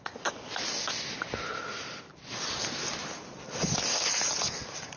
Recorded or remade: recorded